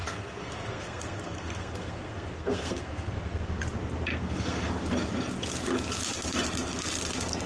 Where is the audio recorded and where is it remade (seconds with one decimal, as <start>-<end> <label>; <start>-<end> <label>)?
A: 0.0-3.6 remade; 3.6-4.1 recorded; 4.1-4.7 remade; 4.7-7.5 recorded